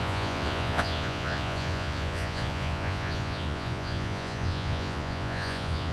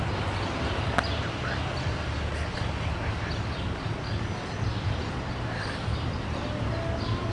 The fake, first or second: first